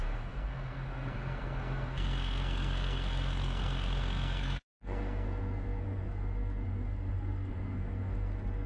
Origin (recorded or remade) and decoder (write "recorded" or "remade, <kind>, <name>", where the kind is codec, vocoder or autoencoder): remade, codec, SNAC